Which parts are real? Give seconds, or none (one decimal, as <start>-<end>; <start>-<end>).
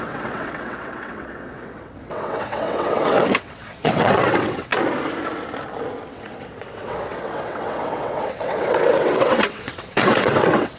4.7-6.1